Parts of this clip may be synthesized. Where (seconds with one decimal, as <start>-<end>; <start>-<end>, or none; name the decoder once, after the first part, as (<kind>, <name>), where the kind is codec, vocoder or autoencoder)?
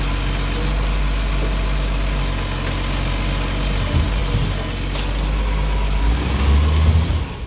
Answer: none